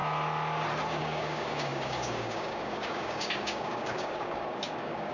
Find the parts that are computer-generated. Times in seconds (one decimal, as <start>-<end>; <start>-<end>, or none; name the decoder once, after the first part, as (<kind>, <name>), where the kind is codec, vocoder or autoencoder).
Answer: 1.0-5.1 (codec, DAC)